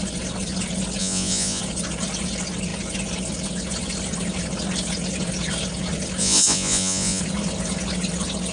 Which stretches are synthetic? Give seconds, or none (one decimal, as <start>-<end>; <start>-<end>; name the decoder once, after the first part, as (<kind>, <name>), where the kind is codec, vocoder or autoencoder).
1.0-1.6 (vocoder, Vocos); 6.2-7.2